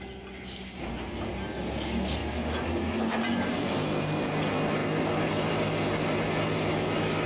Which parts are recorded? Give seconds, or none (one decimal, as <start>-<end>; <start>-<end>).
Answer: 0.0-7.3